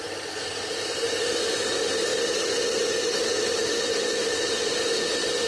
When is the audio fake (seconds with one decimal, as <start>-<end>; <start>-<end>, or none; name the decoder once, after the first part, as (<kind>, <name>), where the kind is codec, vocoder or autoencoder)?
none